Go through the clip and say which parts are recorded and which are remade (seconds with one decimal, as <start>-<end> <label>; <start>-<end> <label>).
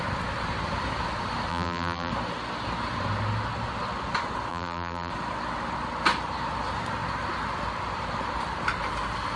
0.0-1.5 recorded; 1.5-2.1 remade; 2.1-4.5 recorded; 4.5-5.1 remade; 5.1-9.4 recorded